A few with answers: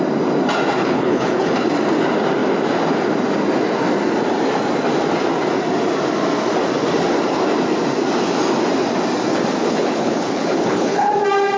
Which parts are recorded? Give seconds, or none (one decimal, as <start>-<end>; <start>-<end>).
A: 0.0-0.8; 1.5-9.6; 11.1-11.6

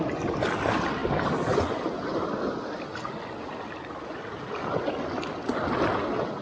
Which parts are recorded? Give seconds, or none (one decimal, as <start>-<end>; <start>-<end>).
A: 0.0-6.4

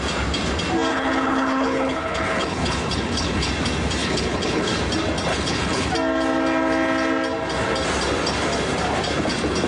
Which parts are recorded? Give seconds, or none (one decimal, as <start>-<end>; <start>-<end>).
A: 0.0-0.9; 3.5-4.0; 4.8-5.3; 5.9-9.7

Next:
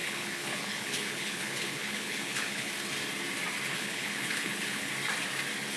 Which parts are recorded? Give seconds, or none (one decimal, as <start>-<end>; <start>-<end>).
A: 2.7-3.7; 4.9-5.8

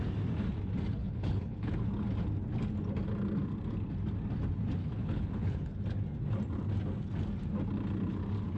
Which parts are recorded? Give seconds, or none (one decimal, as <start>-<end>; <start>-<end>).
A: 0.0-1.0; 1.7-4.8; 5.8-8.6

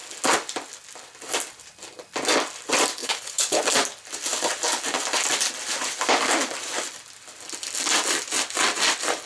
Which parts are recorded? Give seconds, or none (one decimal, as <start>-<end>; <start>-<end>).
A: 0.0-3.0; 3.6-9.3